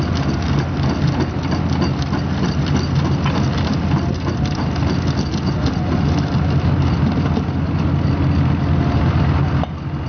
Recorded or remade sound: recorded